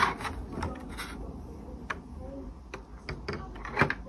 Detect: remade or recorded recorded